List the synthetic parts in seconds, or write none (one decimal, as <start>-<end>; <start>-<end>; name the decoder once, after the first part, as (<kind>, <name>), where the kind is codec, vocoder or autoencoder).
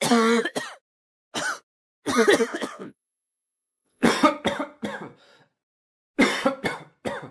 2.5-4.1 (vocoder, WaveNeXt)